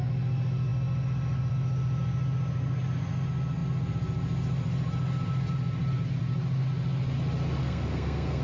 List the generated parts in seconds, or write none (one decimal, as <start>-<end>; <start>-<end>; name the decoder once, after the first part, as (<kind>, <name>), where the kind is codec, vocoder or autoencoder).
7.6-8.4 (codec, SNAC)